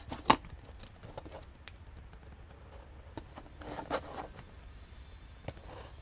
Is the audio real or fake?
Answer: real